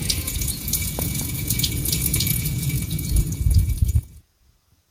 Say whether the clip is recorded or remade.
remade